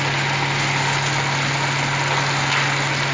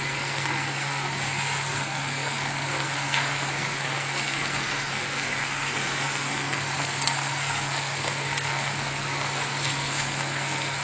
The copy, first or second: second